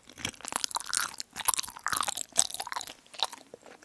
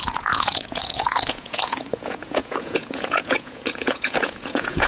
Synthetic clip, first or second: second